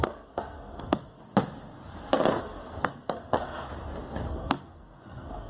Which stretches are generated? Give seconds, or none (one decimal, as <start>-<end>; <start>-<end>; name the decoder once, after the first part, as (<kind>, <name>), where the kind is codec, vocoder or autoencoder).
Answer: 0.0-1.2 (codec, SNAC); 2.4-3.7; 4.3-5.5